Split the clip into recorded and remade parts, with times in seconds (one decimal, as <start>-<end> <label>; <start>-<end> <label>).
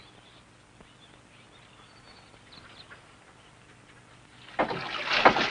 0.0-5.5 recorded